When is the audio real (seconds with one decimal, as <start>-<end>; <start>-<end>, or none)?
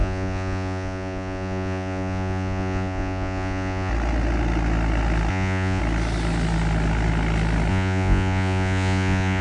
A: 3.9-5.3; 5.8-7.7